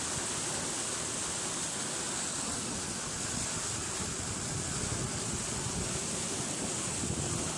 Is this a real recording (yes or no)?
yes